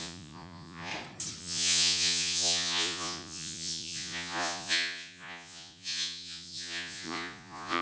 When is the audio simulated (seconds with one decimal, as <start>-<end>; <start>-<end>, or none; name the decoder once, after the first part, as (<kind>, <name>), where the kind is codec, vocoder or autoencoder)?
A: 0.0-0.9 (vocoder, Vocos); 1.4-7.8